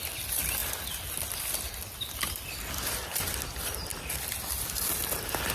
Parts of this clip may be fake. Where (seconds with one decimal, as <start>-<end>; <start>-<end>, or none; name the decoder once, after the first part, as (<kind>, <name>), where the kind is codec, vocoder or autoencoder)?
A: none